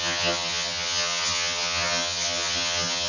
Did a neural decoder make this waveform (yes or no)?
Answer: yes